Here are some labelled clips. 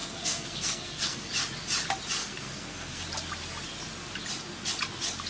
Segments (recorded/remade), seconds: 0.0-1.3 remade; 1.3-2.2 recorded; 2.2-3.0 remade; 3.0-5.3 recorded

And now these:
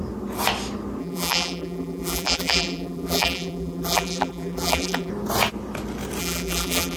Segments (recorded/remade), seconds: 0.0-1.0 recorded; 1.0-5.1 remade; 5.1-6.2 recorded; 6.2-7.0 remade

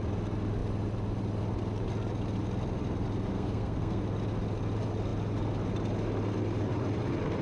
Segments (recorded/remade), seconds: 0.0-3.3 recorded; 3.3-4.0 remade; 4.0-7.4 recorded

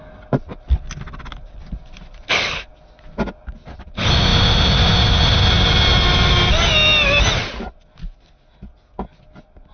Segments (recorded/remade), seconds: 0.0-9.7 recorded

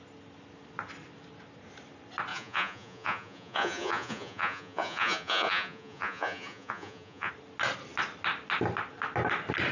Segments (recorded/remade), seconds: 0.0-2.3 recorded; 2.3-7.3 remade; 7.3-9.7 recorded

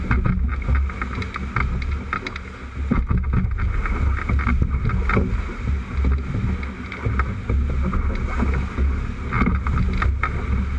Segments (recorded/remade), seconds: 0.0-10.8 recorded

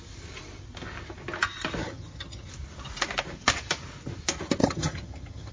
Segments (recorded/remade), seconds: 0.0-1.8 recorded; 1.8-2.5 remade; 2.5-4.6 recorded; 4.6-5.5 remade